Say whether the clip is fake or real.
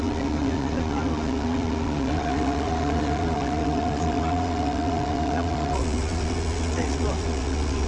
fake